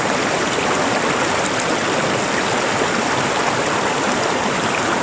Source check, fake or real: real